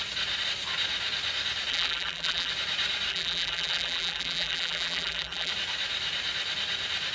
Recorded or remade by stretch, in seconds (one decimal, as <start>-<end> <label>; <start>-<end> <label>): 0.0-1.7 recorded; 1.7-2.5 remade; 2.5-3.1 recorded; 3.1-5.5 remade; 5.5-7.1 recorded